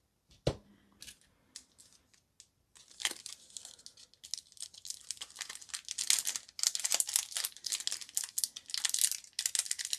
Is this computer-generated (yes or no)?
no